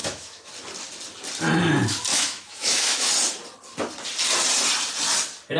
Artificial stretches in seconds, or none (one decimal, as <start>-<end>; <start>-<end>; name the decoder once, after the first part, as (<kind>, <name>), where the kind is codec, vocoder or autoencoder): 0.0-0.5 (autoencoder, DAC-VAE); 2.1-3.1